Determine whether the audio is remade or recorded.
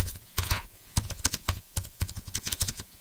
remade